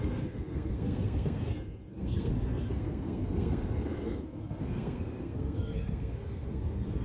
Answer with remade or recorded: remade